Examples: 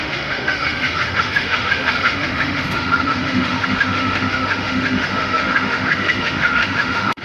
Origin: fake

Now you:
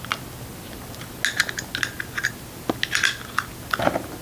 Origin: real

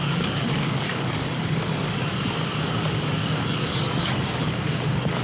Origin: fake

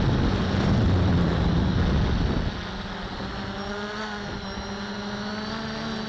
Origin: real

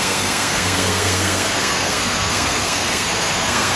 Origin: fake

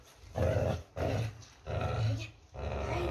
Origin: real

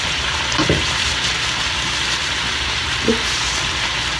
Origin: fake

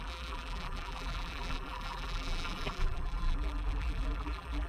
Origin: fake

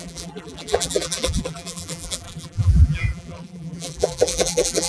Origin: fake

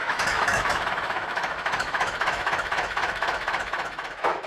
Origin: fake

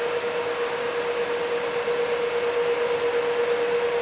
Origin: real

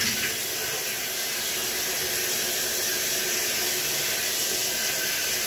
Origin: real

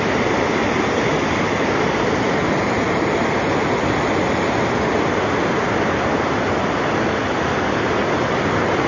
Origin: real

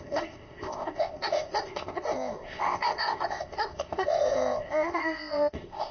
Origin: fake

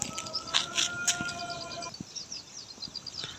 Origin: real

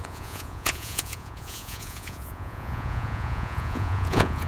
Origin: fake